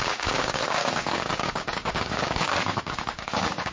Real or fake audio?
fake